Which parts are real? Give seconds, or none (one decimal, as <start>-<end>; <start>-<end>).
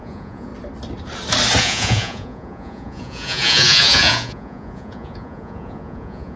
0.5-1.6